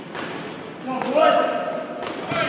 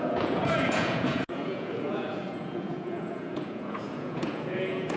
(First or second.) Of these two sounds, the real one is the first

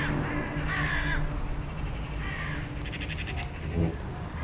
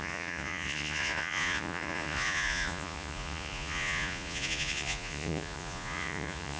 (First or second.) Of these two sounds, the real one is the first